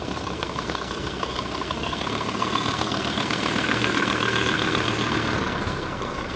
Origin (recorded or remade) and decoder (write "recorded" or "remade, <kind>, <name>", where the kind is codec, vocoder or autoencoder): remade, codec, SNAC